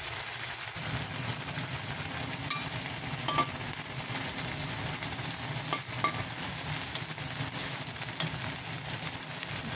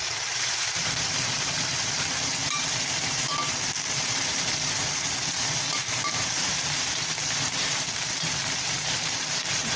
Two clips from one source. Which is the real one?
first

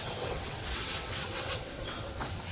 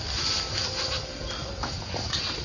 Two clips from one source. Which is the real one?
second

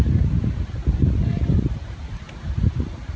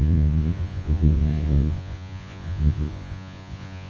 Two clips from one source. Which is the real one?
first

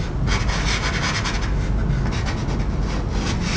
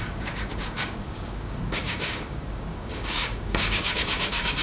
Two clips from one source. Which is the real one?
first